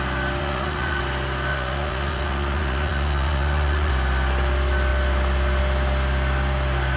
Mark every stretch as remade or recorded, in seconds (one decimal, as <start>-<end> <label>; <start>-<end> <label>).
0.0-0.4 recorded; 0.4-1.0 remade; 1.0-1.5 recorded; 1.5-3.9 remade; 3.9-7.0 recorded